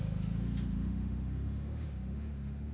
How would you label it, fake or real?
fake